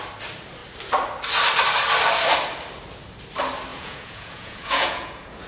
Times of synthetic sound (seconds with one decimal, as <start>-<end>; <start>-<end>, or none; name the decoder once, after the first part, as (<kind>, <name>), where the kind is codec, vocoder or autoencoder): 3.7-5.5 (vocoder, Vocos)